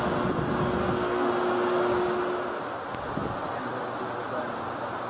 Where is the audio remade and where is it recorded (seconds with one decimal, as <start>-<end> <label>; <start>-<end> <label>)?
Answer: 0.0-0.8 recorded; 0.8-1.3 remade; 1.3-5.1 recorded